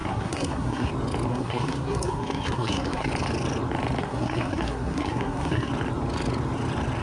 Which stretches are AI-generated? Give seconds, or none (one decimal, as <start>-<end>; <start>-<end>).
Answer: 0.0-0.9; 1.3-3.1; 4.0-5.7